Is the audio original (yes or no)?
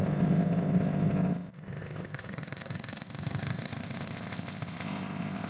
no